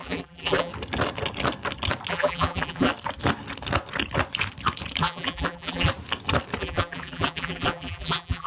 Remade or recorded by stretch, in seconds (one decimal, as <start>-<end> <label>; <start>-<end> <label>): 0.0-0.7 remade; 0.7-2.1 recorded; 2.1-2.9 remade; 2.9-5.0 recorded; 5.0-5.9 remade; 5.9-6.6 recorded; 6.6-8.5 remade